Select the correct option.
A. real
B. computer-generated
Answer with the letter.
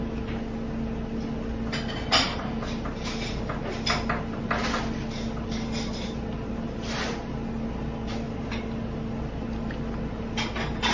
A